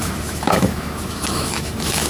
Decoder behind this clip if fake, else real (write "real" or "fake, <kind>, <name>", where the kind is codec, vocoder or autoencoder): fake, autoencoder, DAC-VAE